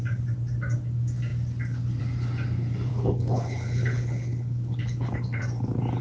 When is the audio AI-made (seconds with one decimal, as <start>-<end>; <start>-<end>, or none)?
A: 2.9-5.4